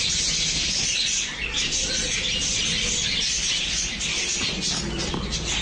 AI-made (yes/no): no